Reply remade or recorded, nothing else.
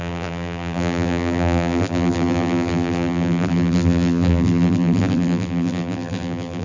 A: remade